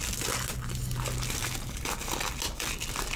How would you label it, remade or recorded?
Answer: recorded